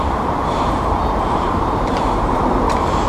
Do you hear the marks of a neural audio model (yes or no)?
yes